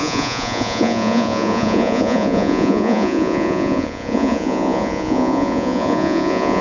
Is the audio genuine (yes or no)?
no